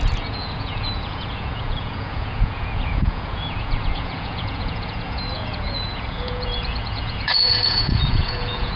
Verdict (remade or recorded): remade